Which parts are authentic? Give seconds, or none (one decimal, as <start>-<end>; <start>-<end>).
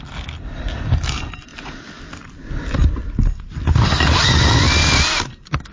0.0-5.7